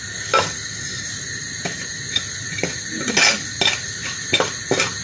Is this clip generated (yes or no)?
no